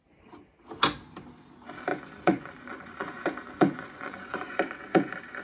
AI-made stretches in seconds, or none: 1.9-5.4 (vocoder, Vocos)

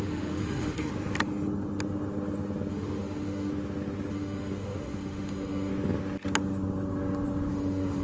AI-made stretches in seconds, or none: 0.0-0.9 (autoencoder, DAC-VAE); 2.7-3.5; 4.1-5.7; 7.5-8.0

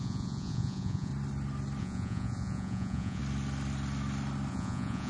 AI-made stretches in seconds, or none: 0.0-1.1 (vocoder, Vocos); 1.8-3.2; 4.5-5.1

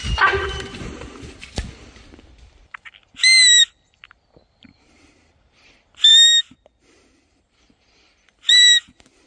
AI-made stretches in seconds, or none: none

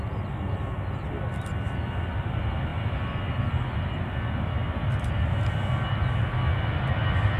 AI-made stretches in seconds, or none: none

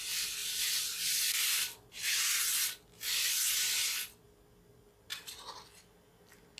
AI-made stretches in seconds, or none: none

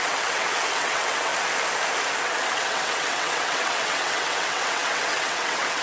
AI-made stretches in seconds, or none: 0.0-1.3 (vocoder, WaveNeXt); 2.2-5.8